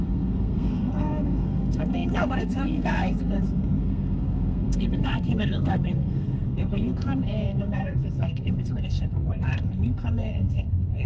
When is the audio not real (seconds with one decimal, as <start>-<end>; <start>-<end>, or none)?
0.0-11.1

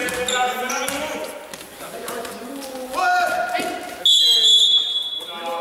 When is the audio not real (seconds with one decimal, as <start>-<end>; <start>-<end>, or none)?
none

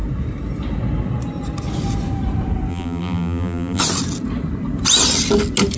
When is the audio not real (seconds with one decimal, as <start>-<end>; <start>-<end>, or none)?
2.7-3.8

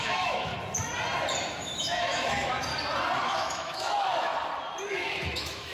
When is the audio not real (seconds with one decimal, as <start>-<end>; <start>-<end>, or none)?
0.0-0.5; 1.5-2.7; 3.2-4.3; 4.9-5.7

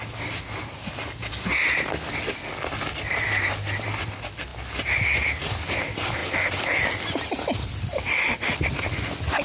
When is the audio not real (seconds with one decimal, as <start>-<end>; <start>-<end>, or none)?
none

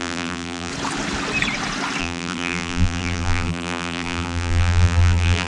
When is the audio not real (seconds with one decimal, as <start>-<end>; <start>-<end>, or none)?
0.0-0.7; 2.0-5.5

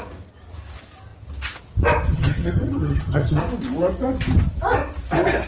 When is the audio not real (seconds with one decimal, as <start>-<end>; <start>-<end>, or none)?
2.1-3.4